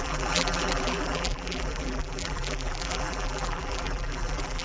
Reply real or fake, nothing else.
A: fake